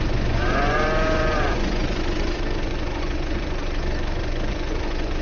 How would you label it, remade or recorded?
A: remade